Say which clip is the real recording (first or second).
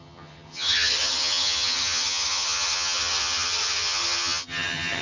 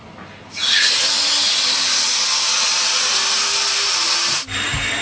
second